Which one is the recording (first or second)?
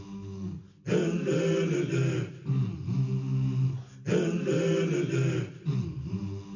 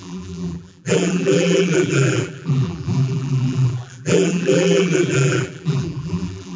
first